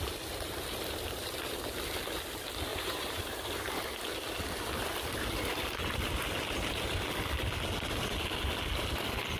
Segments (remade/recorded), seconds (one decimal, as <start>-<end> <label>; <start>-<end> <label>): 0.0-2.7 recorded; 2.7-3.7 remade; 3.7-9.4 recorded